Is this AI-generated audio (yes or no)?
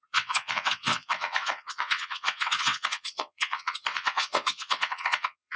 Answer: yes